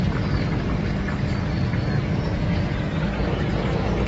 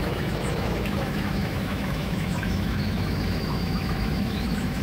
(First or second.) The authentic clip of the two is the first